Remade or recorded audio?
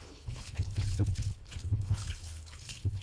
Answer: remade